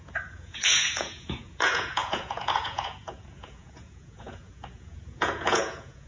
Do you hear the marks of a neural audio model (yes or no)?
yes